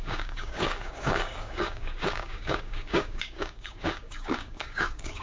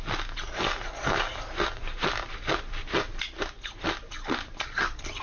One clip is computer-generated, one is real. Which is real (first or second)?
second